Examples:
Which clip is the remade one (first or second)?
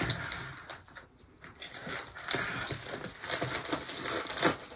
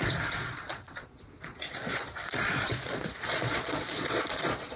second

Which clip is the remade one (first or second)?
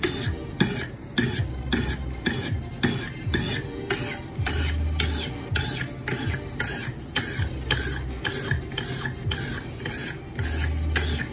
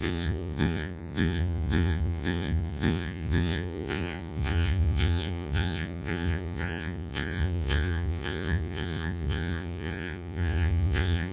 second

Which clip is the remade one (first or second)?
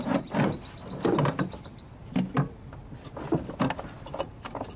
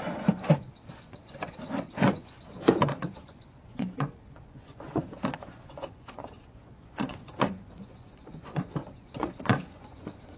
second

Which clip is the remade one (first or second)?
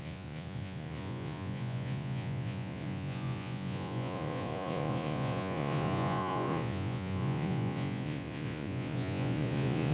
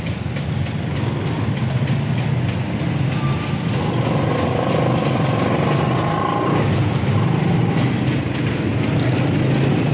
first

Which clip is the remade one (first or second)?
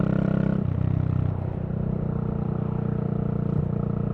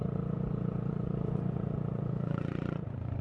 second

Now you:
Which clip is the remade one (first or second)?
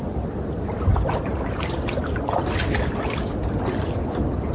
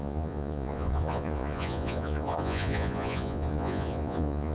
second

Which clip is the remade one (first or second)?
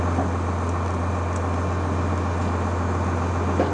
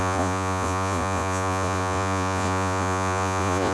second